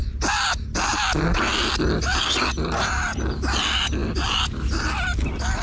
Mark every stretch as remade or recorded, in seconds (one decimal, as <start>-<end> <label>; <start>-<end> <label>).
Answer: 0.0-5.6 recorded